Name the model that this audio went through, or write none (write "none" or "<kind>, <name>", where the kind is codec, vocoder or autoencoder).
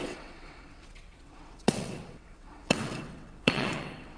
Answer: vocoder, WaveNeXt